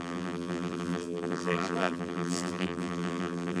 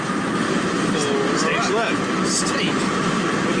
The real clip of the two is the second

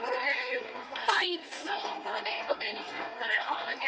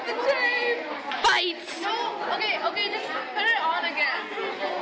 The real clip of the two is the second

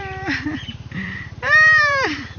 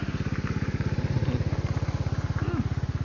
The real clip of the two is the second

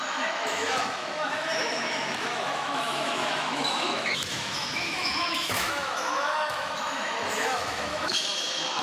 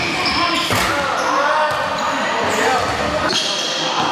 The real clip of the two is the second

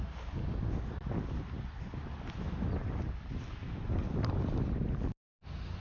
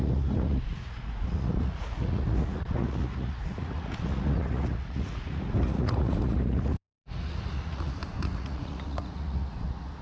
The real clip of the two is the first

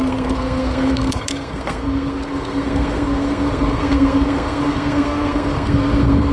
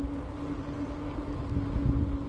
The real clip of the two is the second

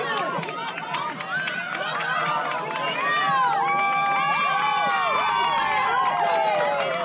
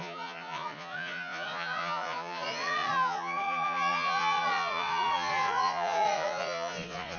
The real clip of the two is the first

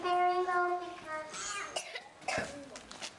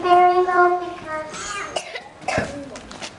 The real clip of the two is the first